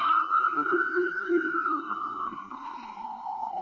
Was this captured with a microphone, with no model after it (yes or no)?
no